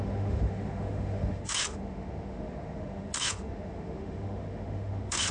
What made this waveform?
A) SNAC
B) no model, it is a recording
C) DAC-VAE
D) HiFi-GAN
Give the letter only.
C